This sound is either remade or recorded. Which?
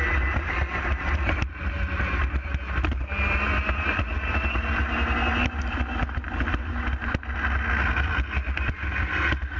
recorded